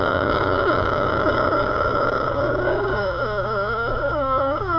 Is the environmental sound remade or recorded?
remade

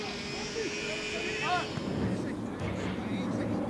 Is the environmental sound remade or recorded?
recorded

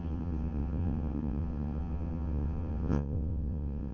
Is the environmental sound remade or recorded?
remade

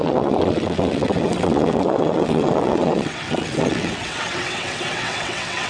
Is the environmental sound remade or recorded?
remade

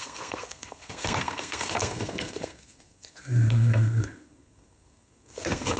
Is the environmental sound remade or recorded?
remade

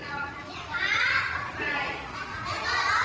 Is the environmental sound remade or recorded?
remade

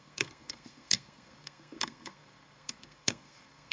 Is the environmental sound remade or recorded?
remade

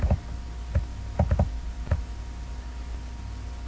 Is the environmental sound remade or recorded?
recorded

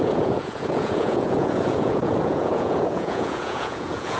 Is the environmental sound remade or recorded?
remade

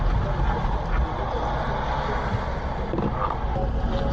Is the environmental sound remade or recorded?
recorded